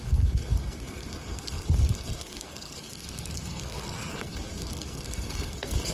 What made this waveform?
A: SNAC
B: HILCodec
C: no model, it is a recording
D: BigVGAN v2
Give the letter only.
A